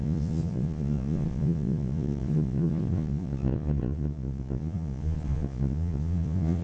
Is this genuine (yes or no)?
no